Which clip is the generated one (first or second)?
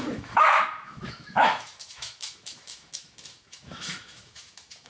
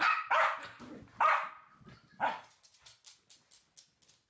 first